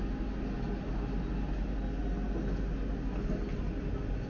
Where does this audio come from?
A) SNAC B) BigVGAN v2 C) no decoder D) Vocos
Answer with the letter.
C